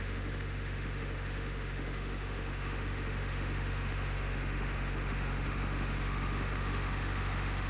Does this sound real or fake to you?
fake